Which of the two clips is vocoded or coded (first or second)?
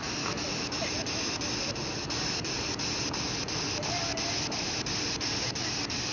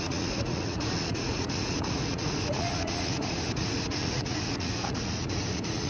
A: second